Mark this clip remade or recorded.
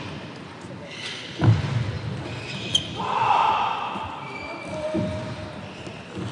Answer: recorded